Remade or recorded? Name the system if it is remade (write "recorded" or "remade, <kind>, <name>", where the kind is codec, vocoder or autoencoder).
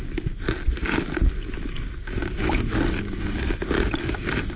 recorded